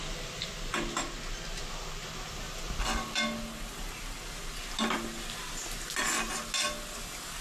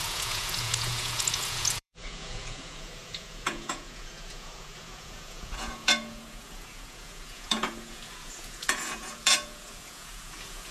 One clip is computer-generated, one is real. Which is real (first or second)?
first